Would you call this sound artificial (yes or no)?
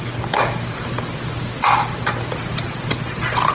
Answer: no